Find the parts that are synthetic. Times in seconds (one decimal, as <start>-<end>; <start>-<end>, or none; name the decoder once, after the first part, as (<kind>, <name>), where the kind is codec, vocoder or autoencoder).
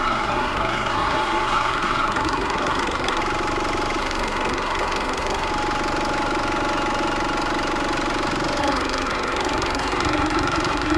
0.0-3.2 (codec, SNAC); 4.0-5.5; 8.6-11.0